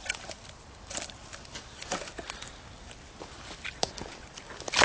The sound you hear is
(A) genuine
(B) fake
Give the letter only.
B